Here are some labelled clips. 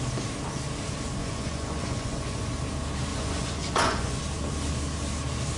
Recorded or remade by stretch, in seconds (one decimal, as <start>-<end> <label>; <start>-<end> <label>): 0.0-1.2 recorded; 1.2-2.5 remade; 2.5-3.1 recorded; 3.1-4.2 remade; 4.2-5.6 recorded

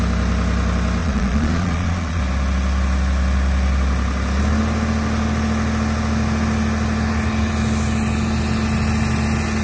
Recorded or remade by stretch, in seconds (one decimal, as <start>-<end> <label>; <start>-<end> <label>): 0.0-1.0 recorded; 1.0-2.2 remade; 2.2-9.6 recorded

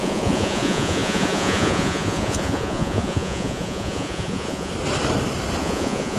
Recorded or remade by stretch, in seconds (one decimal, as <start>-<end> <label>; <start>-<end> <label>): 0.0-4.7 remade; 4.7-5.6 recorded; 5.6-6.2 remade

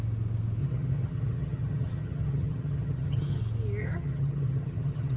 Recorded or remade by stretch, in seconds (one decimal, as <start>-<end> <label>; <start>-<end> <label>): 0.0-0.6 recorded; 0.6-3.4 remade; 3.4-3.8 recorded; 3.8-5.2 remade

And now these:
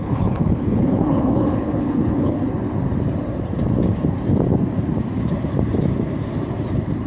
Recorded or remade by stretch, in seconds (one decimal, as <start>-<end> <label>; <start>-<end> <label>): 0.0-2.4 remade; 2.4-7.1 recorded